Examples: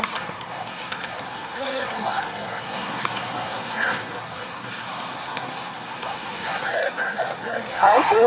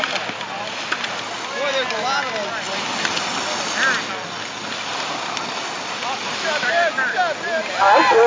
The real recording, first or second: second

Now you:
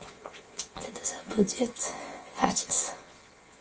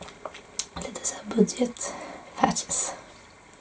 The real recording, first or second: second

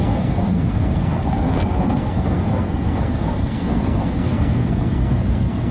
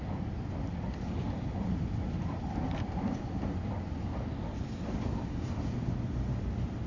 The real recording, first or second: second